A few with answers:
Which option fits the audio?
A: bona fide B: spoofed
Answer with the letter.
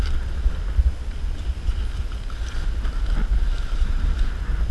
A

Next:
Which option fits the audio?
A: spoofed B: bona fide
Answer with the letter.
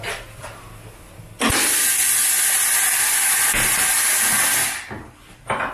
B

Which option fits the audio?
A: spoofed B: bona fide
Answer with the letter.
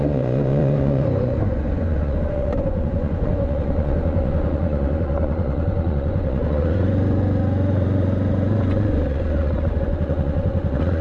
A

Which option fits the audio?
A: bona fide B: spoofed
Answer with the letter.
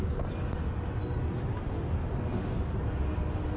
A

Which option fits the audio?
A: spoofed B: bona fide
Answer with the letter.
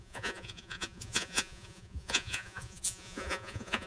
A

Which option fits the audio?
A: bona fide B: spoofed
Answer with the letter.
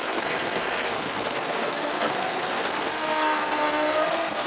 B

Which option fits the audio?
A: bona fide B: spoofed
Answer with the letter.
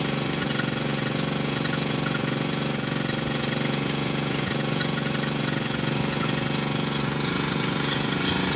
B